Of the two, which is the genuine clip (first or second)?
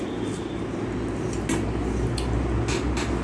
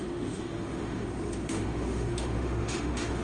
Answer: first